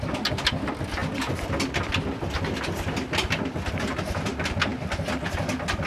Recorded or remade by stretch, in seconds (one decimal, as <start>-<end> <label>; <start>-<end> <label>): 0.0-5.9 recorded